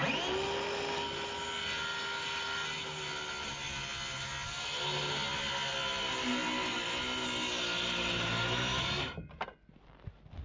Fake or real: real